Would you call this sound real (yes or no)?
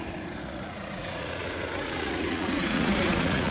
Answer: no